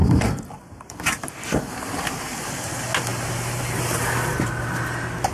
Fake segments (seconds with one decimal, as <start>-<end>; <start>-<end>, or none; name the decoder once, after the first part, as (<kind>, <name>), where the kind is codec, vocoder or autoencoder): 0.0-1.7 (vocoder, BigVGAN v2)